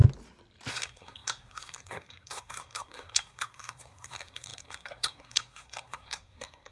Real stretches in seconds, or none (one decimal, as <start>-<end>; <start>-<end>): 0.0-0.7